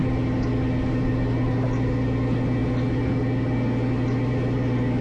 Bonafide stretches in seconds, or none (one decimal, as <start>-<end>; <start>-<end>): 0.0-5.0